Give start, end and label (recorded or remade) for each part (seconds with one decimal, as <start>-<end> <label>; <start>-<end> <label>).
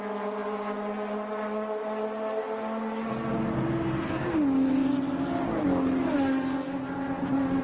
0.0-7.6 recorded